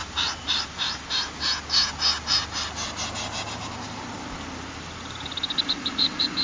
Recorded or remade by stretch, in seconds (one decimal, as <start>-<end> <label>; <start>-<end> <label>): 0.0-1.4 remade; 1.4-6.4 recorded